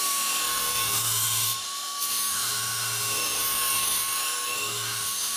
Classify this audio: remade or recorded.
remade